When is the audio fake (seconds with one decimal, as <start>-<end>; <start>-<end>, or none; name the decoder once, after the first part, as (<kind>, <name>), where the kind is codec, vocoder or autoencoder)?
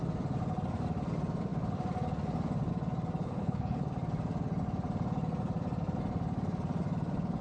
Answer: 3.2-3.8 (codec, HILCodec)